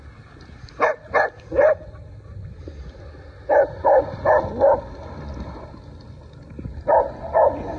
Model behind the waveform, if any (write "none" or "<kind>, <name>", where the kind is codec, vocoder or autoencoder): none